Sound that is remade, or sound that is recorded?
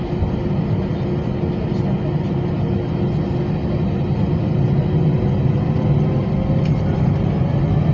recorded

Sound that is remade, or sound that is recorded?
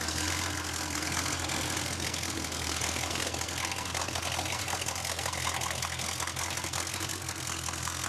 remade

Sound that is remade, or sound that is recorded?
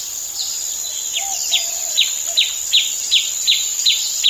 recorded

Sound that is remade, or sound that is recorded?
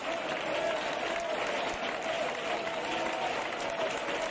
recorded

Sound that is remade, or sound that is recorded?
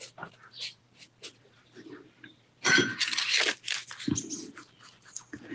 recorded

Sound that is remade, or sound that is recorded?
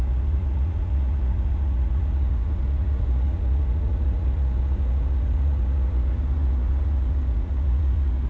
remade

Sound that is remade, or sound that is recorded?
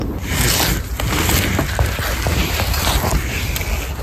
recorded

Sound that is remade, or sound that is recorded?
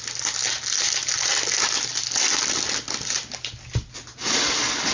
recorded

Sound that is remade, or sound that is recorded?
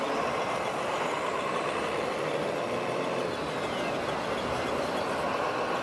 recorded